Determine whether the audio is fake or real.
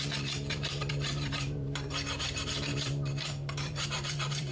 fake